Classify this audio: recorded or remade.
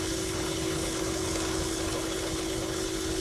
remade